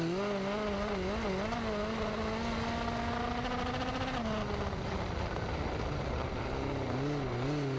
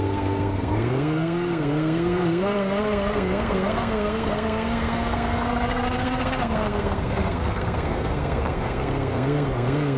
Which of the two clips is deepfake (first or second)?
second